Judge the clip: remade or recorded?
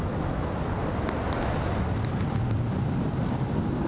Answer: recorded